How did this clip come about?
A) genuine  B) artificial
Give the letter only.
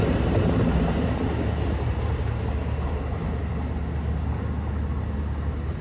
A